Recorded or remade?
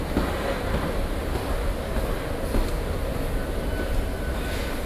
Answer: recorded